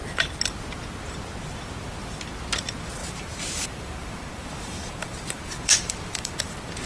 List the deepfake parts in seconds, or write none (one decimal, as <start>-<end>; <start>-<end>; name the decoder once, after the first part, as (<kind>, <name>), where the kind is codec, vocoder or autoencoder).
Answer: 3.0-6.5 (vocoder, BigVGAN v2)